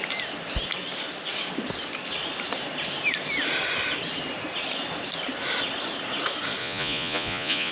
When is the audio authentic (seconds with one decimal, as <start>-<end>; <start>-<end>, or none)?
0.0-6.6

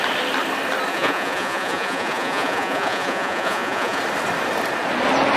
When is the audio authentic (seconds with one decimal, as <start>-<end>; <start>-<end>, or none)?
0.0-0.9; 4.0-5.4

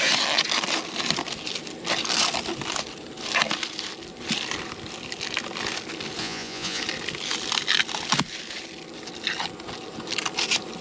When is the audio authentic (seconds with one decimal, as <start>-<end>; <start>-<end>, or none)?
0.0-6.2; 6.8-10.8

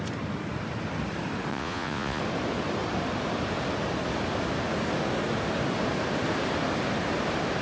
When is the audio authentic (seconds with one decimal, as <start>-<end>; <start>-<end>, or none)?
0.0-1.5; 2.2-7.6

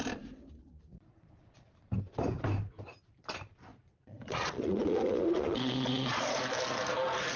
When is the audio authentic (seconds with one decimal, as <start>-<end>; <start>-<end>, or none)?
0.0-3.7; 6.4-7.4

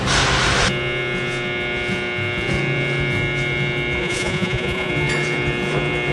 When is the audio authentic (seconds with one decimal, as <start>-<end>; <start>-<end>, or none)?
0.0-4.0; 4.9-6.1